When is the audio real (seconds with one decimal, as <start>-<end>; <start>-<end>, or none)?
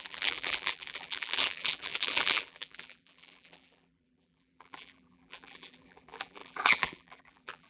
none